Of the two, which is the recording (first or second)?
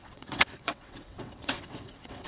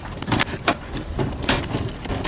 second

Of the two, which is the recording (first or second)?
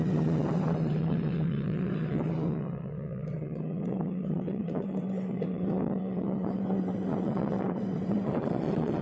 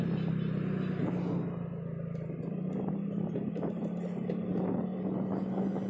second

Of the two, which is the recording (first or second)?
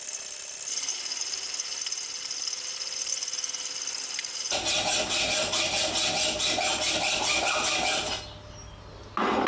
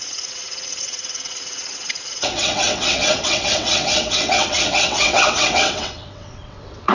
first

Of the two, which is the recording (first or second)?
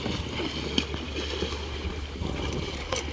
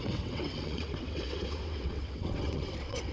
first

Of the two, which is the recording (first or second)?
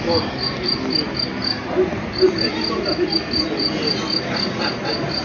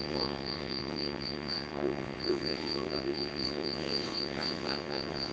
first